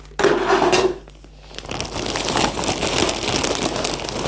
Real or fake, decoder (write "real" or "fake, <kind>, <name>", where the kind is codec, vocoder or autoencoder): real